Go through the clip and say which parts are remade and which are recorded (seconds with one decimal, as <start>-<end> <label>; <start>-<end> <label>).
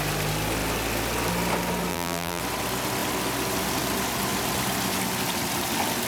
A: 0.0-1.9 recorded; 1.9-2.4 remade; 2.4-6.1 recorded